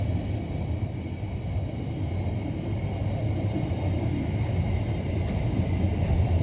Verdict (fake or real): real